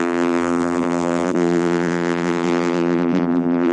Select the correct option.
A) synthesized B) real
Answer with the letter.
A